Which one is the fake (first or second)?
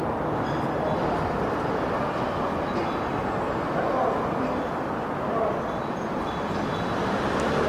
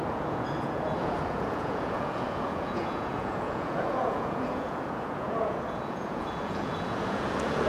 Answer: second